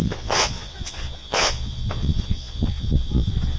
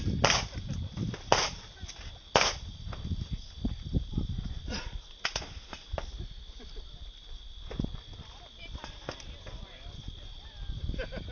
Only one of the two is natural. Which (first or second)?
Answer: second